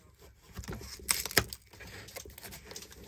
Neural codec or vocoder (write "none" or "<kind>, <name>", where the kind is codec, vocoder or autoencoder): none